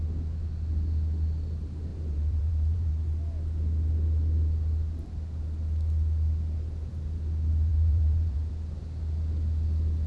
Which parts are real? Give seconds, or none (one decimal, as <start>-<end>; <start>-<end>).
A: 0.0-1.9; 2.9-7.7; 8.5-10.1